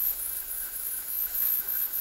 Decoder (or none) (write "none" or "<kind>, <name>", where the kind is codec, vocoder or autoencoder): autoencoder, DAC-VAE